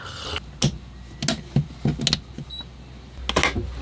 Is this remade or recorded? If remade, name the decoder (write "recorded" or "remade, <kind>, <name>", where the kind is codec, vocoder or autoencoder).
recorded